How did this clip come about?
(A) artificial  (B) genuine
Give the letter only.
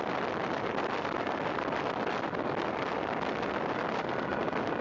A